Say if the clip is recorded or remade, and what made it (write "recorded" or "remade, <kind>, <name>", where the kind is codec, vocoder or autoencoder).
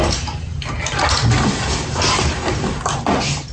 recorded